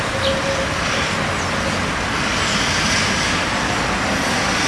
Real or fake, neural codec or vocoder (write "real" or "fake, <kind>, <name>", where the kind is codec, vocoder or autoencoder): real